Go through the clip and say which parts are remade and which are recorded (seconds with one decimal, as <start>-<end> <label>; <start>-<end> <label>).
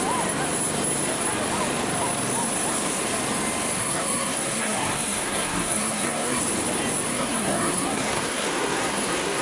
0.0-3.8 recorded; 3.8-6.4 remade; 6.4-7.1 recorded; 7.1-9.4 remade